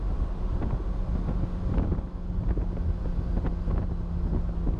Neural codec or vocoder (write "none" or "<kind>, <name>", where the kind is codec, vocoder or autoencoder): none